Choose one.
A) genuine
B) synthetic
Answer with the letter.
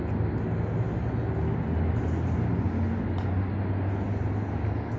A